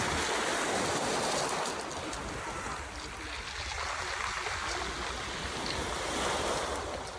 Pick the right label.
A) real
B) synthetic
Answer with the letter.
A